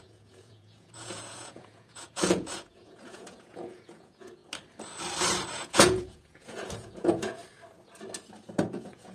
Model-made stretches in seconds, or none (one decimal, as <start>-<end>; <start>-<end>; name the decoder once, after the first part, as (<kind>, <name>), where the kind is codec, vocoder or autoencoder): 0.0-4.4 (vocoder, Vocos); 5.6-7.4; 8.6-9.1